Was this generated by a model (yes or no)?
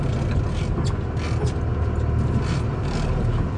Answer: no